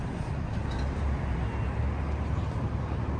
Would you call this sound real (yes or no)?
yes